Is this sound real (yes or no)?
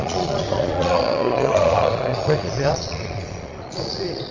no